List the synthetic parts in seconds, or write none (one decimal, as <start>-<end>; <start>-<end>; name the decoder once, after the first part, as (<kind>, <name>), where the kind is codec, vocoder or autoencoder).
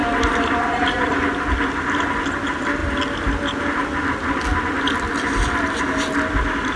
0.0-1.4 (vocoder, BigVGAN v2)